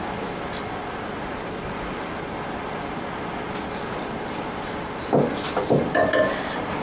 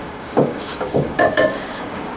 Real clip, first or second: first